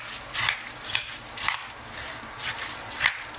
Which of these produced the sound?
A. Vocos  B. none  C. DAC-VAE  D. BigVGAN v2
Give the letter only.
B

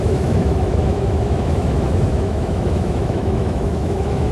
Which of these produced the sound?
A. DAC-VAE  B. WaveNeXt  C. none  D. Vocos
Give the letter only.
A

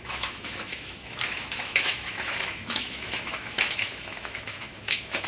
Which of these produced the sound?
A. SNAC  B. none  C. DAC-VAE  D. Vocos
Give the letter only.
C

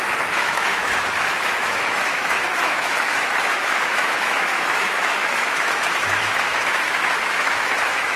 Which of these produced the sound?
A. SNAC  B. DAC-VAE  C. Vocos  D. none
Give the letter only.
B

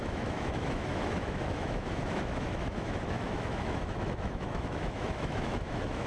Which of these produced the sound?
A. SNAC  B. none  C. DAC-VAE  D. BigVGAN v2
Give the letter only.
C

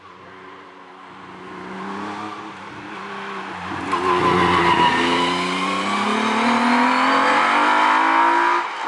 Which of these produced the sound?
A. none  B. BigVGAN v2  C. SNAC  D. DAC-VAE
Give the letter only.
A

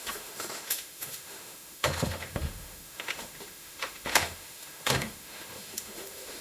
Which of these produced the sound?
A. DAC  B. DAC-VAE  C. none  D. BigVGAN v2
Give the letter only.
B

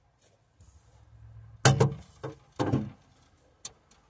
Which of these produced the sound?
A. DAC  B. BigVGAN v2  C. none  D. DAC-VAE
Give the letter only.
C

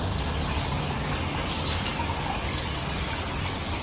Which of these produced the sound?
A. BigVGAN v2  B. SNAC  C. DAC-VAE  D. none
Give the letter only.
D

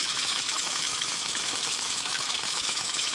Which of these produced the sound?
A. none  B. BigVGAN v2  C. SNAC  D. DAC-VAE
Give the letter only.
D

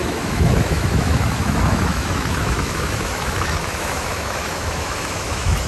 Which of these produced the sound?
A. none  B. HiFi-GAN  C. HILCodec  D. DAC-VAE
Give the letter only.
D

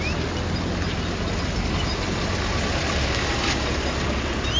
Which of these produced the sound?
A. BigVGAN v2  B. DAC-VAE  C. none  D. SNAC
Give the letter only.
C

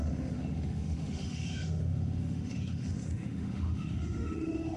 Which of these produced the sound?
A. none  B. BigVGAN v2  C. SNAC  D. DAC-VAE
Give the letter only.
D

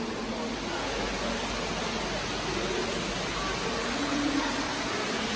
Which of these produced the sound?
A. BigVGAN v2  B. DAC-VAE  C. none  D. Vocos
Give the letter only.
C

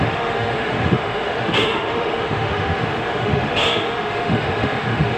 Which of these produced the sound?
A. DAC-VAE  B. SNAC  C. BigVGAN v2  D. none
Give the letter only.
A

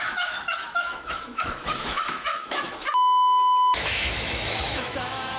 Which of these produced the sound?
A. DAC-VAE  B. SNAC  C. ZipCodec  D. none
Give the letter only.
A